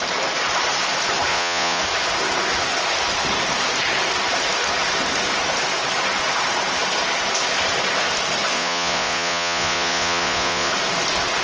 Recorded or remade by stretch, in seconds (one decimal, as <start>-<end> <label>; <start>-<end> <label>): 0.0-1.3 recorded; 1.3-1.8 remade; 1.8-8.5 recorded; 8.5-10.7 remade; 10.7-11.4 recorded